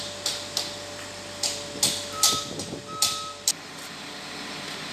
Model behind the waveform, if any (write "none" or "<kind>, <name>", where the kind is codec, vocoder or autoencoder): none